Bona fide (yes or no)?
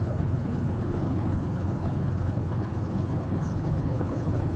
no